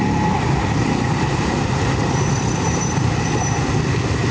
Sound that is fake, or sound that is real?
fake